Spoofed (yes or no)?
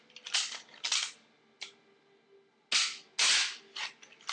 no